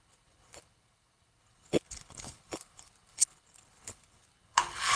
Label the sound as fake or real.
fake